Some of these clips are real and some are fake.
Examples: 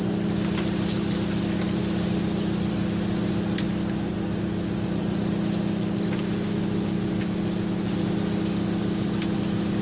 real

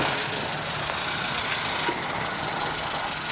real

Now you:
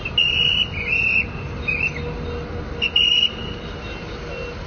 real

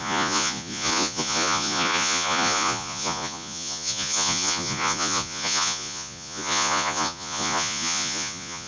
fake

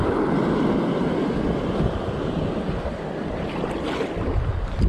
real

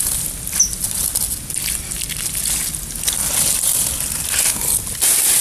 real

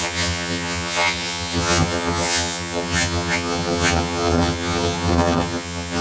fake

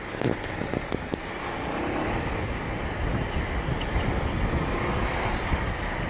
real